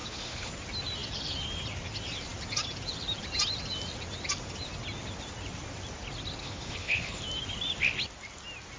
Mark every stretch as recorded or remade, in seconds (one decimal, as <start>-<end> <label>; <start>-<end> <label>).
0.0-0.5 remade; 0.5-6.4 recorded; 6.4-7.2 remade; 7.2-8.8 recorded